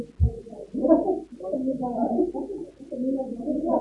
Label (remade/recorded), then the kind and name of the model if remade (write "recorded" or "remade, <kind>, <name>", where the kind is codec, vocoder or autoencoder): recorded